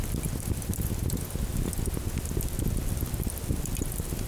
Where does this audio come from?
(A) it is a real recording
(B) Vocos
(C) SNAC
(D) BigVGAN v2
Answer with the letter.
A